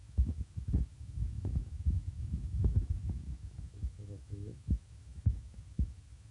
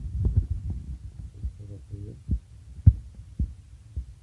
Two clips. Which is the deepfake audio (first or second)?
first